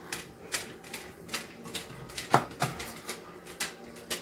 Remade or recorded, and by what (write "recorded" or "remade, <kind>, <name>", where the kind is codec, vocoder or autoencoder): recorded